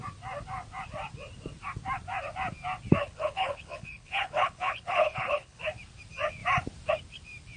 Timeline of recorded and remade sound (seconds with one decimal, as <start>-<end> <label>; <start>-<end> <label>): 0.0-3.0 recorded; 3.0-5.6 remade; 5.6-7.6 recorded